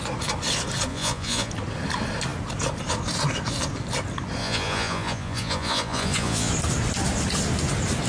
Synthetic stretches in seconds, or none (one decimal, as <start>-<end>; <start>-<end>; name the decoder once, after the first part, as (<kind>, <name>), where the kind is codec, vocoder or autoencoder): 0.9-1.5 (vocoder, Vocos); 4.4-6.5